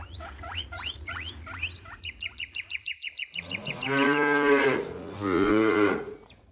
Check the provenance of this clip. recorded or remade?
remade